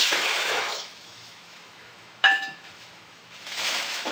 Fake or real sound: fake